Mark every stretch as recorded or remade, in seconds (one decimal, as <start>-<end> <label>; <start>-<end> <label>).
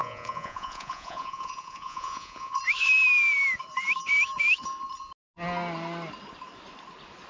0.0-2.6 remade; 2.6-7.3 recorded